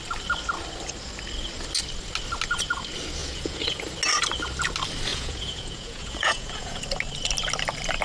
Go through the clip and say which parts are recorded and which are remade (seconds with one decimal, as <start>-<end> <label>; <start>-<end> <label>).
0.0-3.2 recorded; 3.2-3.8 remade; 3.8-5.1 recorded; 5.1-6.8 remade; 6.8-8.0 recorded